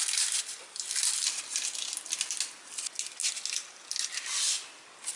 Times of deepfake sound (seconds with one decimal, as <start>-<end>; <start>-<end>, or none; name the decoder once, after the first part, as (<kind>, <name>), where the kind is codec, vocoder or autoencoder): none